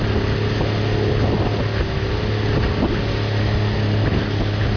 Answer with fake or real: real